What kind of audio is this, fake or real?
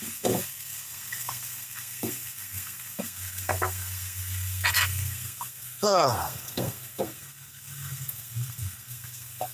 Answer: fake